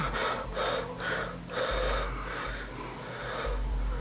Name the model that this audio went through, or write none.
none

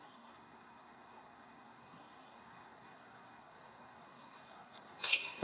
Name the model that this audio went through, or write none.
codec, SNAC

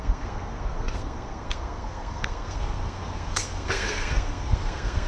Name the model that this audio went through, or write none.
codec, SNAC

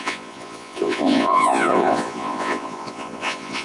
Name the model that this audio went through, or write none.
vocoder, Vocos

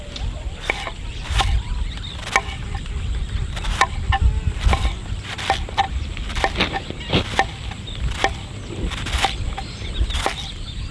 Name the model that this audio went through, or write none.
none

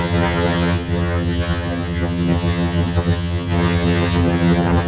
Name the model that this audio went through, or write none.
vocoder, HiFi-GAN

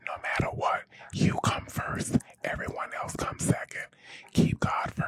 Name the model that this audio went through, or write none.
none